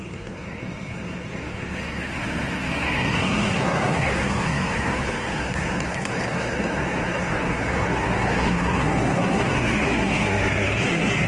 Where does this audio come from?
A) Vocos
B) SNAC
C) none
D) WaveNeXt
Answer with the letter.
B